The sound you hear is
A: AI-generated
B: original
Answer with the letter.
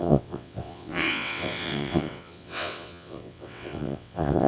A